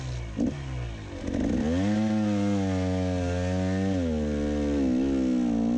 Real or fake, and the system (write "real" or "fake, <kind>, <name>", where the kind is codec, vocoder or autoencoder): real